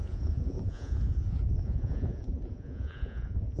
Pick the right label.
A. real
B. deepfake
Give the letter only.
B